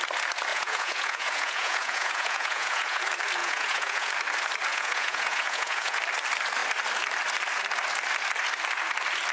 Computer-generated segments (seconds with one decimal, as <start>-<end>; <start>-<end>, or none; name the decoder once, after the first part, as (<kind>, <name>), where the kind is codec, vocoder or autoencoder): 0.5-3.0 (vocoder, Vocos); 3.4-4.1; 4.7-6.0